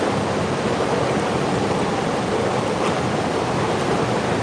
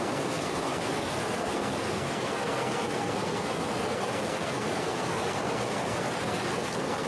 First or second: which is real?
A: first